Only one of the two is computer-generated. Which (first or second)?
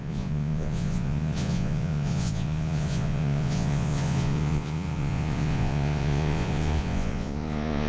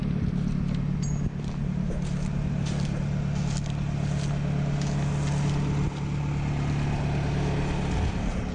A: first